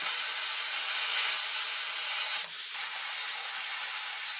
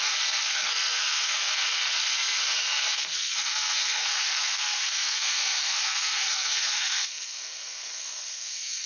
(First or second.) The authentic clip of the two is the first